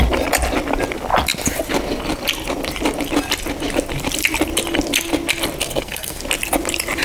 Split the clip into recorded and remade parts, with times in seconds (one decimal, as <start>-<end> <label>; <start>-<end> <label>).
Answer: 0.0-5.6 recorded; 5.6-6.2 remade; 6.2-7.0 recorded